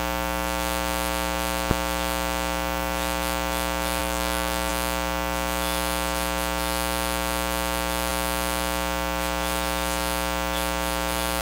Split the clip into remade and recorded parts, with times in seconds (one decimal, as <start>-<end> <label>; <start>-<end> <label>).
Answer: 0.0-4.0 recorded; 4.0-4.7 remade; 4.7-11.4 recorded